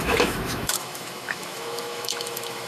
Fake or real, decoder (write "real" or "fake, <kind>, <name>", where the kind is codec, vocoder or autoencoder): fake, autoencoder, DAC-VAE